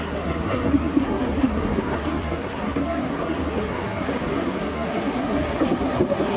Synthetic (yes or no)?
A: yes